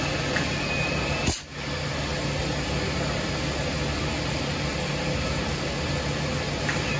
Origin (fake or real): real